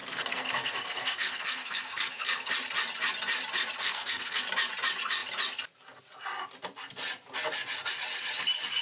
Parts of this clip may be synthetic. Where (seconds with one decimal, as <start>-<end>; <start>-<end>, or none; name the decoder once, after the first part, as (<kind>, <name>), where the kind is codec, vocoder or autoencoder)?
0.0-2.5 (codec, SNAC); 3.8-4.4